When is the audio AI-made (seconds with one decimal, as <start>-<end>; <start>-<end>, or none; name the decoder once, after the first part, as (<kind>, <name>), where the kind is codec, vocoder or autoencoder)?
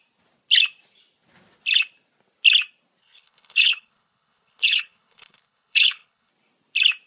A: 3.0-6.3 (codec, HILCodec)